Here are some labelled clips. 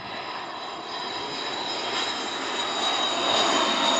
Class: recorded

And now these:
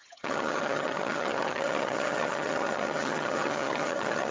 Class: remade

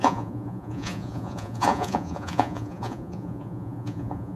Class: remade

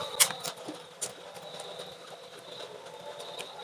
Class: recorded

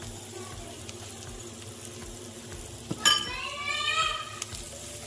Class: recorded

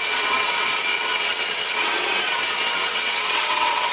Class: remade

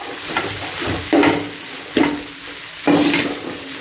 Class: recorded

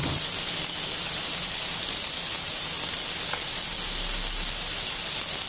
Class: recorded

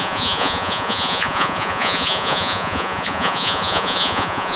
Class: remade